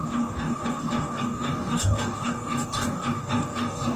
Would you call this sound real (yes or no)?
no